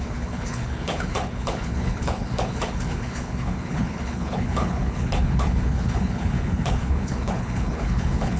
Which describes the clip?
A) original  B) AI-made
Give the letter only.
B